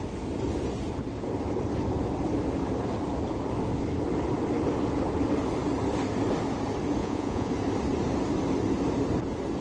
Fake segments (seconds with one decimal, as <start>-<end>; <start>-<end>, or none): 7.0-7.5